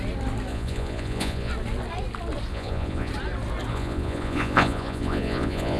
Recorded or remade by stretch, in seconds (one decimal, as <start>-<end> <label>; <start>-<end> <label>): 0.0-0.5 recorded; 0.5-1.5 remade; 1.5-2.5 recorded; 2.5-3.1 remade; 3.1-3.7 recorded; 3.7-5.8 remade